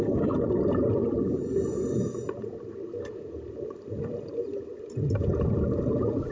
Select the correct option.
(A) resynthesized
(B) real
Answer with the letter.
A